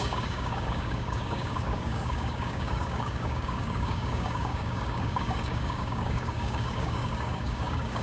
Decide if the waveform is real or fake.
fake